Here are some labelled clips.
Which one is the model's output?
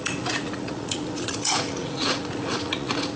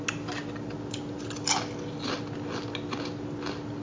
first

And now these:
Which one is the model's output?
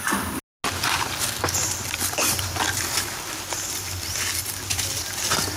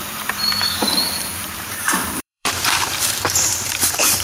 second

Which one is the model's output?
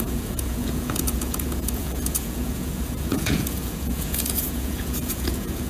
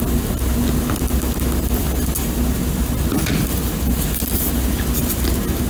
first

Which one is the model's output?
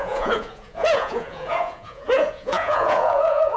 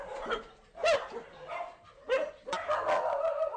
first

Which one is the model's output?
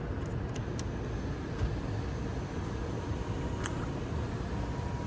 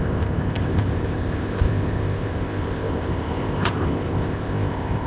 second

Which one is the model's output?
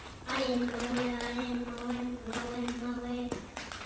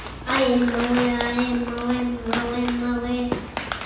first